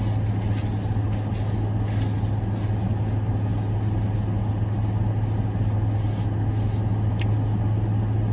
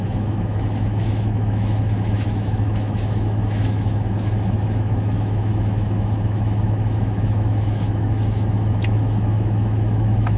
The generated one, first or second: second